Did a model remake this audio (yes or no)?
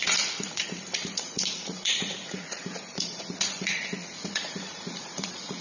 yes